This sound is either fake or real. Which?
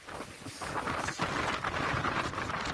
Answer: real